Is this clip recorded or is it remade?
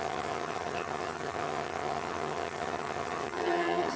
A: remade